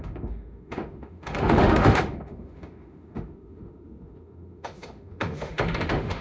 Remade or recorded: remade